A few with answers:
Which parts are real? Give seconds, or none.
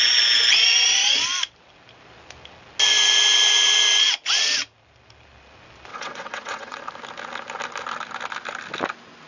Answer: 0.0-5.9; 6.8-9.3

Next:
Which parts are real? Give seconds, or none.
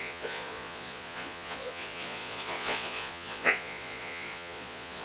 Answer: none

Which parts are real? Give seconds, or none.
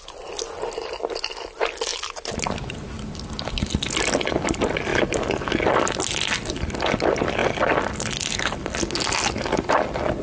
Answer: 0.0-10.2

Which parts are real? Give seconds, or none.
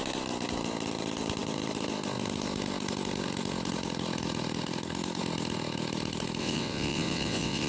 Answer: 0.0-6.4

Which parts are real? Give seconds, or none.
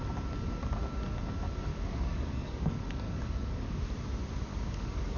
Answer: 0.0-1.7; 3.8-4.5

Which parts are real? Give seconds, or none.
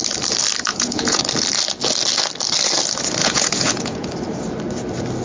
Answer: 0.0-0.7; 1.2-3.2; 4.1-5.2